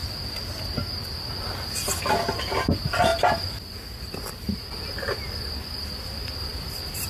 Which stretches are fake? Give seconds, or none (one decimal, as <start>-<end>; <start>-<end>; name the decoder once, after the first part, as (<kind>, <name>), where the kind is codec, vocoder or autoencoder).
none